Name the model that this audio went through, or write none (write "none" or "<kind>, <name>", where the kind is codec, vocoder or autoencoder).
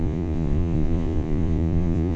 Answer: vocoder, Vocos